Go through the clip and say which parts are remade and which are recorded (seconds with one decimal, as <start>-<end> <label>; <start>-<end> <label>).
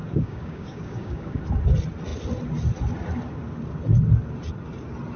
0.0-1.4 remade; 1.4-5.2 recorded